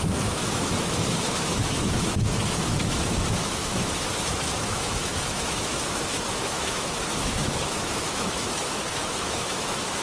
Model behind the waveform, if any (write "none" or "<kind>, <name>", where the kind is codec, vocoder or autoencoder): autoencoder, DAC-VAE